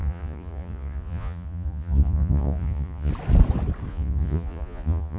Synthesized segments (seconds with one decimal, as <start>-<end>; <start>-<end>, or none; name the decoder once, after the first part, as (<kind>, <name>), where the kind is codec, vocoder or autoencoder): 0.0-3.1 (vocoder, Vocos); 3.9-5.2